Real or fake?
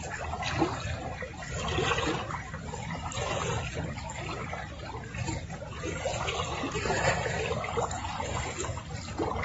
real